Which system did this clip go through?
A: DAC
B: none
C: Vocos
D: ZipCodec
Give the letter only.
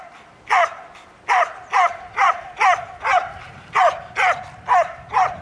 B